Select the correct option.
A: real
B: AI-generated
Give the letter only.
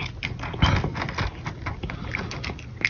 A